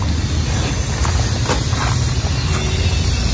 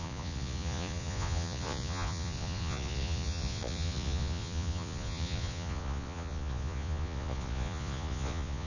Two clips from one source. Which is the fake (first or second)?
second